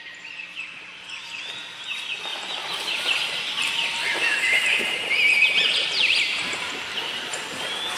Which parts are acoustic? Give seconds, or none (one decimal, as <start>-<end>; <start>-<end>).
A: 0.0-2.3; 6.7-8.0